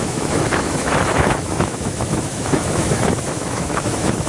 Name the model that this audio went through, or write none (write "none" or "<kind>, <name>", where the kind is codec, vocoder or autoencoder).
autoencoder, DAC-VAE